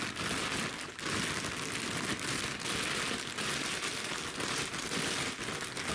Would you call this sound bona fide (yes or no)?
yes